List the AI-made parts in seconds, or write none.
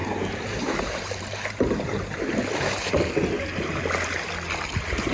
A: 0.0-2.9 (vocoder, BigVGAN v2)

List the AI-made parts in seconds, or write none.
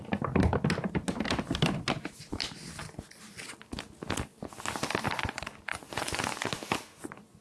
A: 5.7-6.5 (vocoder, Vocos)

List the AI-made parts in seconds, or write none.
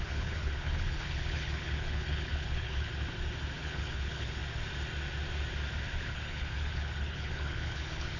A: 0.0-2.9 (codec, HILCodec); 3.6-4.4; 6.0-8.2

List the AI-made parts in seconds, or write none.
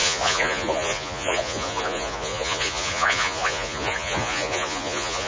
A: 0.0-5.3 (vocoder, Vocos)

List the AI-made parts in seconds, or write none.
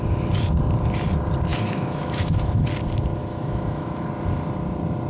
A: 1.5-2.7 (autoencoder, DAC-VAE); 3.2-4.1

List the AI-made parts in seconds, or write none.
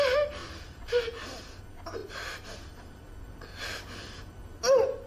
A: 0.0-3.5 (vocoder, BigVGAN v2); 4.0-5.1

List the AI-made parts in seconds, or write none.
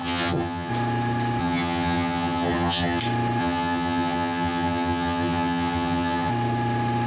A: 0.0-0.7 (vocoder, HiFi-GAN); 1.4-3.0; 3.4-6.3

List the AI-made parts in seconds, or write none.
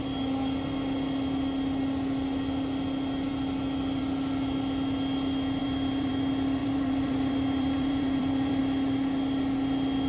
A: 5.6-6.1 (vocoder, BigVGAN v2); 6.6-8.6